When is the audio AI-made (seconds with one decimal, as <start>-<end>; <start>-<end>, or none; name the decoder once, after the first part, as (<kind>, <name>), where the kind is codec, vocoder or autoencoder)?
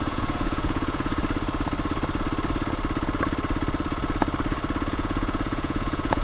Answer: 0.0-1.2 (vocoder, Vocos); 4.9-6.2